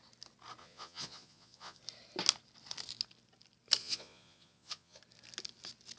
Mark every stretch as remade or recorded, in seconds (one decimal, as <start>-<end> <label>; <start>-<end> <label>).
0.0-0.6 recorded; 0.6-1.8 remade; 1.8-3.8 recorded; 3.8-5.0 remade; 5.0-6.0 recorded